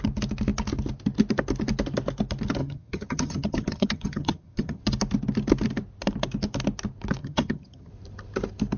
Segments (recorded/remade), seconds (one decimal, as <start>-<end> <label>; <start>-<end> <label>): 0.0-2.6 recorded; 2.6-4.8 remade; 4.8-7.2 recorded; 7.2-7.9 remade; 7.9-8.8 recorded